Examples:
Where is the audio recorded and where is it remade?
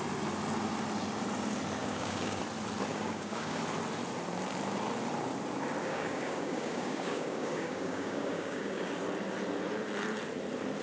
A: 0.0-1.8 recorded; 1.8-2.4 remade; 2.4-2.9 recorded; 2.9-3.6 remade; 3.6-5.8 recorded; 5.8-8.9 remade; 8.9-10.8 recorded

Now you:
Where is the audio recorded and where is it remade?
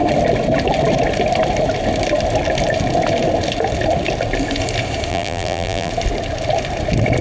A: 0.0-5.1 recorded; 5.1-5.9 remade; 5.9-7.2 recorded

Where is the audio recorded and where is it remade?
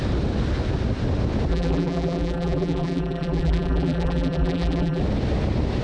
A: 0.0-1.5 recorded; 1.5-5.0 remade; 5.0-5.8 recorded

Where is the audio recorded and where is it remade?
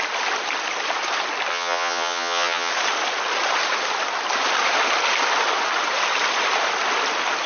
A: 0.0-1.5 recorded; 1.5-2.7 remade; 2.7-7.5 recorded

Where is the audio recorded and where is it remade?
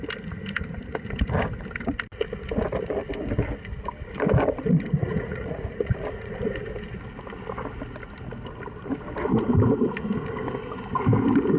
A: 0.0-5.0 recorded; 5.0-6.3 remade; 6.3-11.6 recorded